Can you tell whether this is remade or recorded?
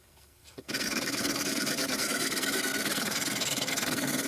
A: remade